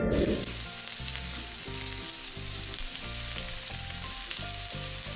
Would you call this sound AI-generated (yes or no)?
no